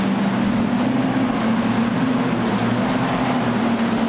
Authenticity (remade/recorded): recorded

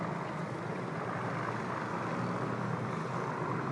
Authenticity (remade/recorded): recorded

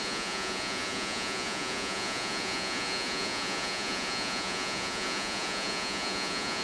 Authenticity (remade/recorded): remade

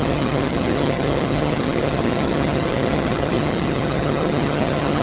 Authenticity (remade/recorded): remade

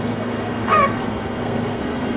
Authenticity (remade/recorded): remade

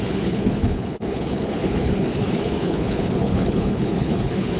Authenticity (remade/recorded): remade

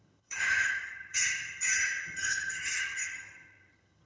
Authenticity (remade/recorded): remade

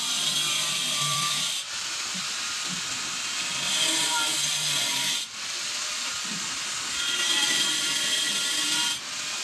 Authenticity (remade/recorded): remade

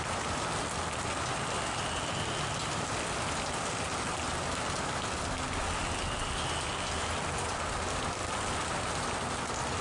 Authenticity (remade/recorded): recorded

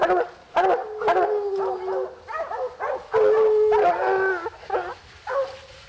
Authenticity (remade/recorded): recorded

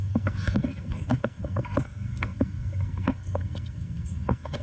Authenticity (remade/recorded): remade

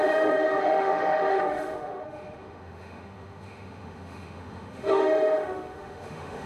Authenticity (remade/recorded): remade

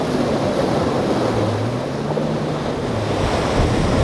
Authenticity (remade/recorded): recorded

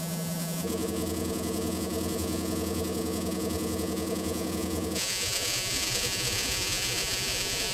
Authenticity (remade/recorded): remade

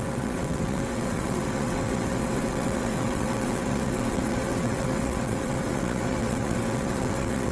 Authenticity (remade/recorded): remade